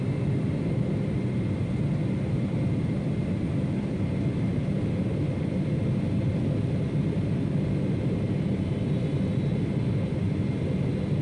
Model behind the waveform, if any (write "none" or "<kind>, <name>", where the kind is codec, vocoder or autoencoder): none